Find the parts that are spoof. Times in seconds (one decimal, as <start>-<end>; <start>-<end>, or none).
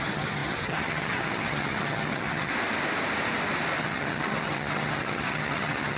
0.0-2.5; 3.8-6.0